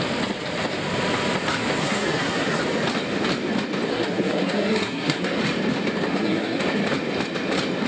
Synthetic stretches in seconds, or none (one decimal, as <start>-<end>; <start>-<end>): 1.8-2.6; 3.9-5.4; 6.1-6.6